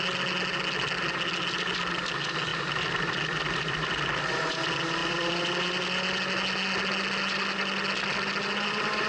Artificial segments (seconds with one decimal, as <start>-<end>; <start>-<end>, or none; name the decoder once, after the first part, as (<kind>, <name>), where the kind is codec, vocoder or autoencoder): 2.5-4.4 (vocoder, BigVGAN v2); 5.0-6.2